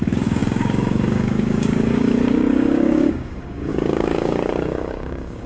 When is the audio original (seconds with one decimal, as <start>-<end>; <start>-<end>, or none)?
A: none